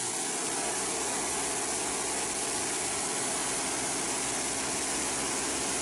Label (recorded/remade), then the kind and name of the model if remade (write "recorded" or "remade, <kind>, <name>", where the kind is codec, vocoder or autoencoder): recorded